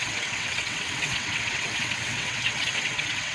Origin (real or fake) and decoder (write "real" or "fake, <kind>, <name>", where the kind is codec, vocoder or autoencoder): fake, vocoder, WaveNeXt